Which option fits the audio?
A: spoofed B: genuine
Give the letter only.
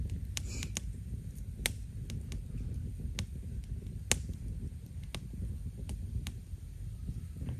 B